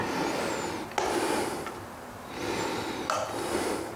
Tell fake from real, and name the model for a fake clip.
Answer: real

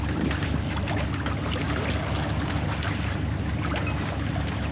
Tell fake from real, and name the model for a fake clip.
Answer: real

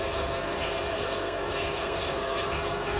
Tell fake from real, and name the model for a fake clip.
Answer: fake, codec, SNAC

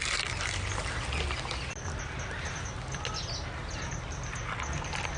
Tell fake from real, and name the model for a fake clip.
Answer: real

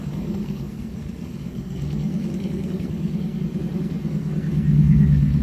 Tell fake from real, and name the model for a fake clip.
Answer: fake, codec, SNAC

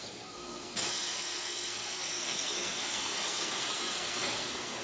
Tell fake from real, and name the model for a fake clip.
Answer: fake, codec, SNAC